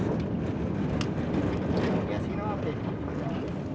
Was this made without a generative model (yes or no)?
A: yes